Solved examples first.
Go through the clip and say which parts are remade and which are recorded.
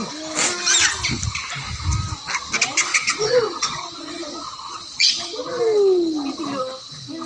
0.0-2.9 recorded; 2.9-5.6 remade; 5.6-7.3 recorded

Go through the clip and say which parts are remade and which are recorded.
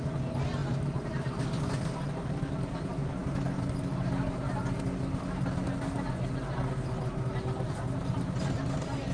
0.0-9.1 recorded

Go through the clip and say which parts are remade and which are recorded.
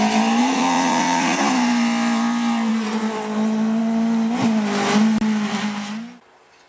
0.0-0.4 recorded; 0.4-1.4 remade; 1.4-6.7 recorded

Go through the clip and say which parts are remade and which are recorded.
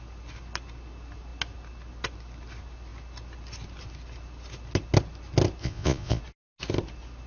0.0-5.6 recorded; 5.6-6.2 remade; 6.2-7.3 recorded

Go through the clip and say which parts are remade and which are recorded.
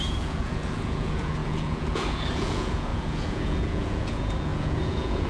0.0-5.3 remade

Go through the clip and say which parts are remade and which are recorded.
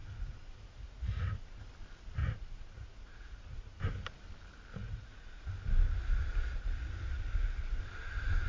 0.0-1.6 remade; 1.6-2.2 recorded; 2.2-3.8 remade; 3.8-4.8 recorded; 4.8-5.5 remade; 5.5-8.5 recorded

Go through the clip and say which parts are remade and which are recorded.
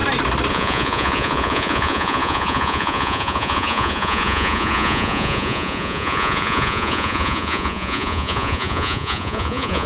0.0-0.5 recorded; 0.5-9.9 remade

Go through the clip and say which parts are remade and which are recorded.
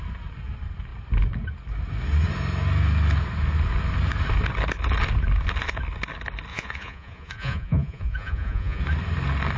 0.0-6.5 recorded; 6.5-8.8 remade; 8.8-9.6 recorded